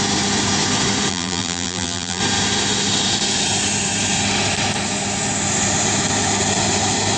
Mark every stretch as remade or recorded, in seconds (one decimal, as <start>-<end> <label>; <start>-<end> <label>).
0.0-1.1 recorded; 1.1-2.2 remade; 2.2-7.2 recorded